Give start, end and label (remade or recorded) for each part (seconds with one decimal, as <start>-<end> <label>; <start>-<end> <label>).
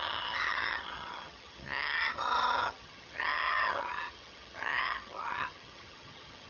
0.0-6.5 remade